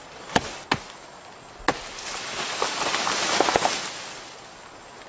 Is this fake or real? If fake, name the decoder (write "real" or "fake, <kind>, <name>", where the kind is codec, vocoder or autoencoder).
real